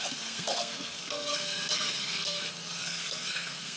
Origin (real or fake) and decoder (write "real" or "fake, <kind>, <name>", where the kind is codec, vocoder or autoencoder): fake, codec, SNAC